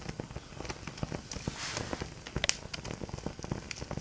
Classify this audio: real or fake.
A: real